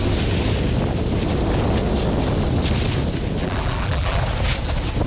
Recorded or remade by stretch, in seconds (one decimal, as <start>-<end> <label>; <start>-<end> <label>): 0.0-3.4 recorded; 3.4-4.2 remade; 4.2-5.1 recorded